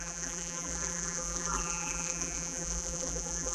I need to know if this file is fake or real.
fake